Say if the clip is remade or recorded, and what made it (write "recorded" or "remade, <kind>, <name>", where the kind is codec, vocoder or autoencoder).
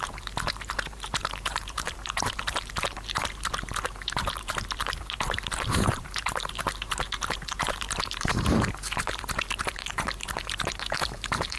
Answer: remade, vocoder, BigVGAN v2